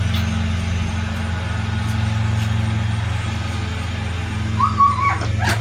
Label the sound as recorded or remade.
recorded